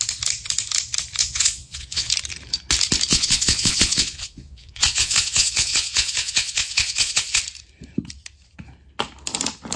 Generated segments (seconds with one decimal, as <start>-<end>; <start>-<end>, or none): 1.2-2.1; 3.1-7.4